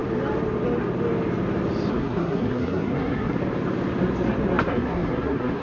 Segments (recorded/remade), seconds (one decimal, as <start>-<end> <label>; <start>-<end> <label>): 0.0-1.9 recorded; 1.9-3.4 remade; 3.4-4.6 recorded; 4.6-5.6 remade